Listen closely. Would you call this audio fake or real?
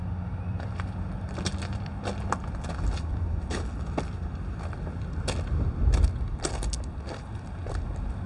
real